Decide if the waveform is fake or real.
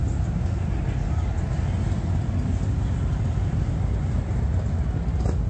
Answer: real